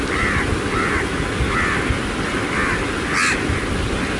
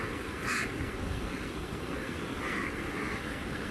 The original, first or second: first